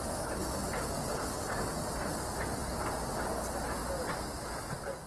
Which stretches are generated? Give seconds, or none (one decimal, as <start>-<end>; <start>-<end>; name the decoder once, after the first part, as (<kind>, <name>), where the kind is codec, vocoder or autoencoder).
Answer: none